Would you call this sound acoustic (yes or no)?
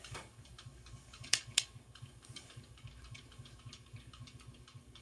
no